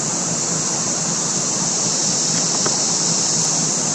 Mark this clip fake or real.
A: real